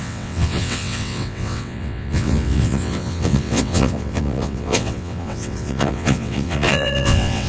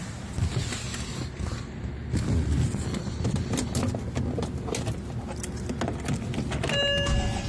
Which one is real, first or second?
second